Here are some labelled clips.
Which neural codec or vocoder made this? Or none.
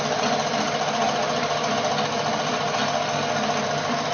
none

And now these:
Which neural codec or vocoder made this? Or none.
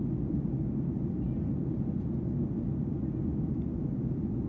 none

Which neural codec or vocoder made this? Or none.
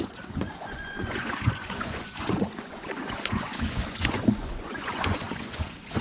vocoder, Vocos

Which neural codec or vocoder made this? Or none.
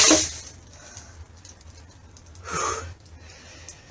none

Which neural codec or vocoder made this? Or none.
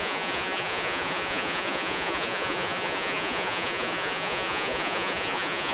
vocoder, Vocos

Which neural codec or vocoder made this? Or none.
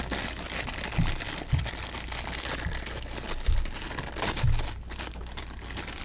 none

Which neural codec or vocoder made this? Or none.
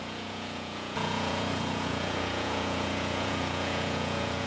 vocoder, Vocos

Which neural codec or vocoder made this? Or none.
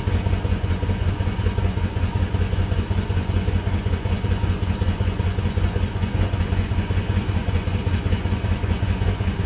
vocoder, Vocos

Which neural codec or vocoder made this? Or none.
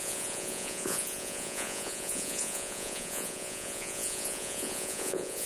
vocoder, Vocos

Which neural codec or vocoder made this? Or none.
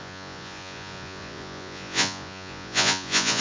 vocoder, Vocos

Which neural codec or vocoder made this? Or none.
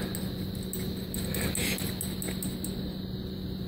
none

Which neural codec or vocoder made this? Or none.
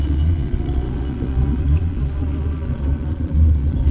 vocoder, Vocos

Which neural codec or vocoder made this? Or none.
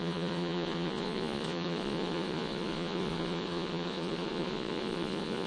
vocoder, Vocos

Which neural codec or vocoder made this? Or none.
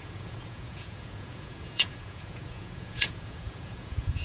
vocoder, Vocos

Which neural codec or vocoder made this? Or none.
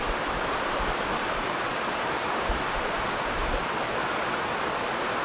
none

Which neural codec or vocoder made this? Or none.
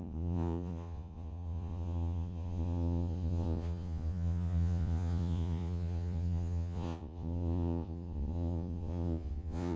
vocoder, Vocos